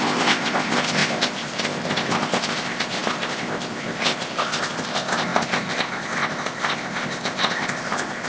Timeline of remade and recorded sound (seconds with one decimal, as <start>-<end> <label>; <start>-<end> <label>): 0.0-8.3 remade